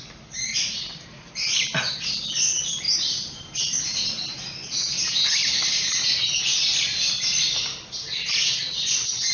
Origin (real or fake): real